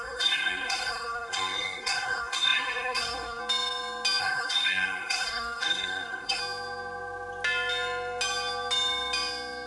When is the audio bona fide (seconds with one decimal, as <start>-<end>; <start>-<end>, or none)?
3.4-4.2; 6.4-9.7